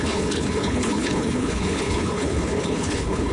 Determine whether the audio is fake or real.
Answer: fake